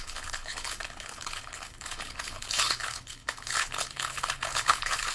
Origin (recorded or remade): remade